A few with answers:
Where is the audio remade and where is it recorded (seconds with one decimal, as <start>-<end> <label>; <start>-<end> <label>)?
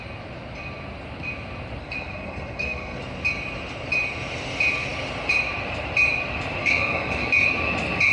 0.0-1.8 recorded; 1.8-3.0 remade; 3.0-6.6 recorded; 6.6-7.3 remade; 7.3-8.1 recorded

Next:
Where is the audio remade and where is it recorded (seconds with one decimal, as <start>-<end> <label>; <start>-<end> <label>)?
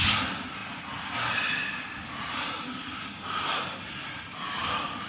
0.0-5.1 recorded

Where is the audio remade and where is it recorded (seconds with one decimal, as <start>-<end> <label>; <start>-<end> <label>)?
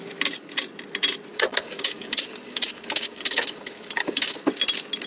0.0-1.3 recorded; 1.3-4.4 remade; 4.4-5.1 recorded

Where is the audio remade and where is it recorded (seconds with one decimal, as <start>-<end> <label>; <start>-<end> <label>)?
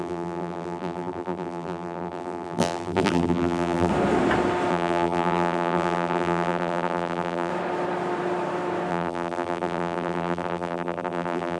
0.0-3.9 remade; 3.9-4.7 recorded; 4.7-7.5 remade; 7.5-8.9 recorded; 8.9-11.6 remade